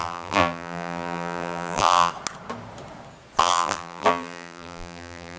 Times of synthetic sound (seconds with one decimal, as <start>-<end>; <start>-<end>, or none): 0.0-2.1; 3.4-5.4